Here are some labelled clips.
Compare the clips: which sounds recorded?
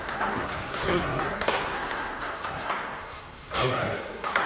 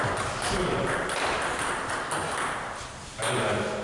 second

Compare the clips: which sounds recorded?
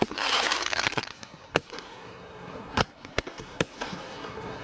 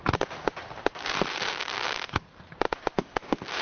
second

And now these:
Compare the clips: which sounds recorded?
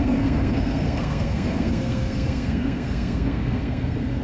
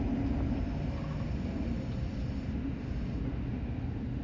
second